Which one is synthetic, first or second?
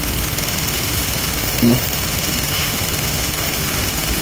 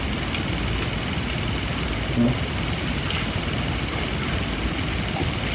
first